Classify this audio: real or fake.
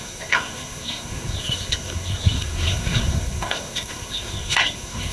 fake